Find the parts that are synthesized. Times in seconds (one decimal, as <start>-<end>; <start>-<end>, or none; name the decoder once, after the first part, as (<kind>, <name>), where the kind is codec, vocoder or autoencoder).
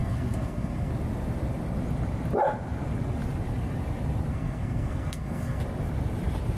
0.0-0.9 (codec, SNAC); 4.3-5.6